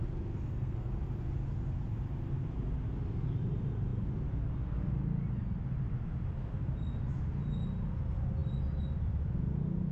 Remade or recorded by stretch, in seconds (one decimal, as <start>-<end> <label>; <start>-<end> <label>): 0.0-0.4 recorded; 0.4-0.9 remade; 0.9-9.9 recorded